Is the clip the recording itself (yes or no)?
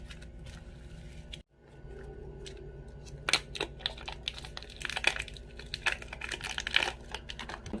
yes